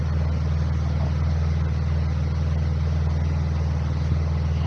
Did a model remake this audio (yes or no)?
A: no